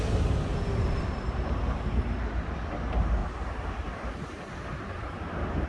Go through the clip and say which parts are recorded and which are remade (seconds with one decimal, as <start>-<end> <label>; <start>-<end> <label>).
0.0-0.5 recorded; 0.5-1.8 remade; 1.8-3.2 recorded; 3.2-4.5 remade; 4.5-5.7 recorded